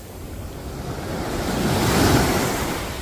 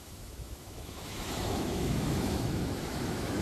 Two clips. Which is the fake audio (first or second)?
second